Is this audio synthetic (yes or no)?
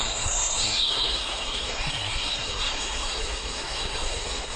yes